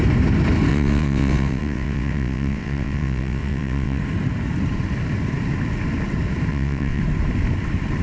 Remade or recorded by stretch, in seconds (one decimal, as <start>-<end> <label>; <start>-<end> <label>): 0.0-0.7 recorded; 0.7-4.0 remade; 4.0-6.5 recorded; 6.5-7.0 remade; 7.0-8.0 recorded

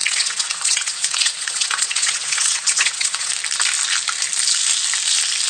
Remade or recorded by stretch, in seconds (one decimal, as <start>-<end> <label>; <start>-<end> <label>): 0.0-3.3 remade; 3.3-5.5 recorded